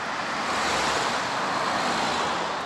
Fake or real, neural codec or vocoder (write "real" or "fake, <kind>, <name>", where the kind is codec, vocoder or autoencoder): real